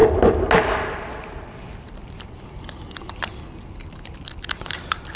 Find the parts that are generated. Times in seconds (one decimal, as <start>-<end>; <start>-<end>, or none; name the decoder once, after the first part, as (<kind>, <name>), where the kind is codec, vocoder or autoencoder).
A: 1.7-5.2 (vocoder, BigVGAN v2)